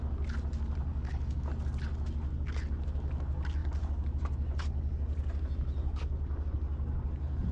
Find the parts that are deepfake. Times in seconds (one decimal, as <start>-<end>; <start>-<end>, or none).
0.9-1.5